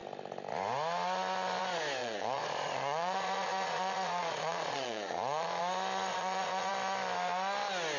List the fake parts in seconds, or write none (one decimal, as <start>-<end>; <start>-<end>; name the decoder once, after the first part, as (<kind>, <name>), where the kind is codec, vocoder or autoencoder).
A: 2.0-5.6 (vocoder, Vocos); 6.1-6.7